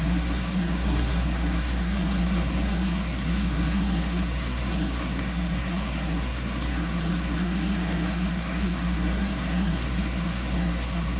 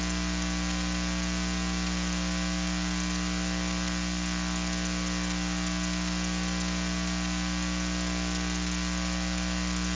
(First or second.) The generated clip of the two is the first